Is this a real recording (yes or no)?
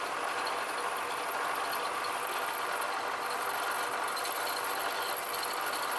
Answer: yes